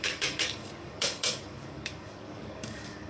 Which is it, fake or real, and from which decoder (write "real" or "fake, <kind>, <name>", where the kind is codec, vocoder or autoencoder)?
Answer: fake, codec, DAC